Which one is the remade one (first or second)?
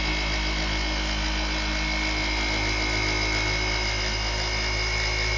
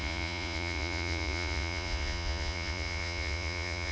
second